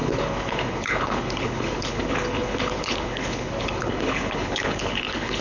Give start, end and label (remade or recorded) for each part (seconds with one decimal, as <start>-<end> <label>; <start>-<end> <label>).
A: 0.0-5.4 remade